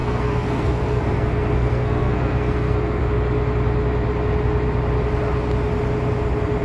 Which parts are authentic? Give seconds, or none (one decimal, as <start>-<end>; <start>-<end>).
3.0-6.6